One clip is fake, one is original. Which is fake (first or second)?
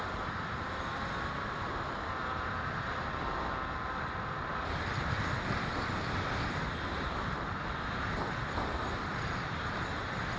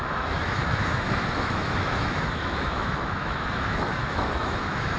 second